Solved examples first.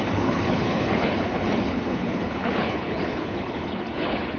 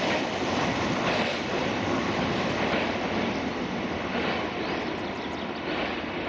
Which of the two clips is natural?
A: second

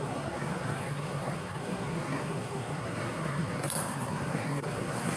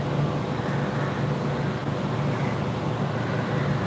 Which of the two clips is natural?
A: second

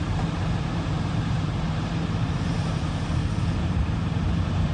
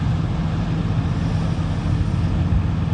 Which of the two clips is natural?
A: second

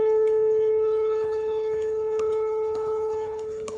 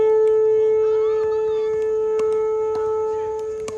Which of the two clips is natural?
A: second